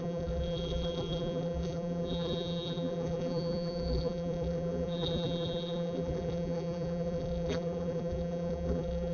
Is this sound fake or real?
fake